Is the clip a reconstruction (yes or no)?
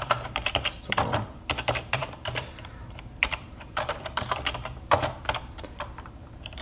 yes